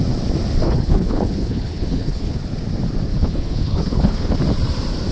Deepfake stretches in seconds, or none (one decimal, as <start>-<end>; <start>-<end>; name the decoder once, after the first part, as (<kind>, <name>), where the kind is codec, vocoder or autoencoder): 0.6-2.4 (codec, HILCodec); 3.1-4.3